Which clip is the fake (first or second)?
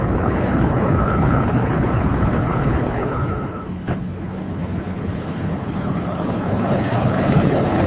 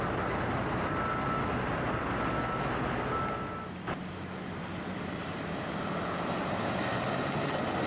first